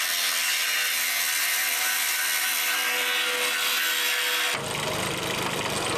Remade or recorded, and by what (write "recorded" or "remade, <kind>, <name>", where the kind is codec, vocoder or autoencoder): recorded